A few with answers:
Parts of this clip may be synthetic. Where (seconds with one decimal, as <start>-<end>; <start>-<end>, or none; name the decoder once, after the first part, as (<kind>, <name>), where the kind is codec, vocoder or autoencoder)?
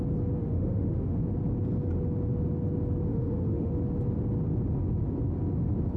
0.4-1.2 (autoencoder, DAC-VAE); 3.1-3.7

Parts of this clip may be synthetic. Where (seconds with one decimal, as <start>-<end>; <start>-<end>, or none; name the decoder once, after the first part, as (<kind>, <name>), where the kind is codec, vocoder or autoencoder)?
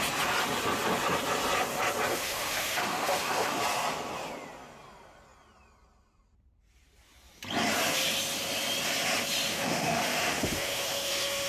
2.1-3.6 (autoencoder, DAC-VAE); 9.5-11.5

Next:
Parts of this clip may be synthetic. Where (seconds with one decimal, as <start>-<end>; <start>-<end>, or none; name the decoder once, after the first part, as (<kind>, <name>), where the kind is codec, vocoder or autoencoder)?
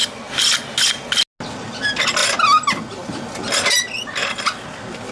none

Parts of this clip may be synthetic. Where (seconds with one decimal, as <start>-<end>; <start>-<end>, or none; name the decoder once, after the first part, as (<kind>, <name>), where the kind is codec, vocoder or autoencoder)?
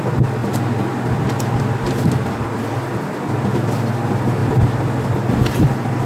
none